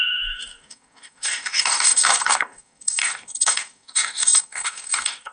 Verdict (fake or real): fake